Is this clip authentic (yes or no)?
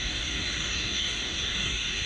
no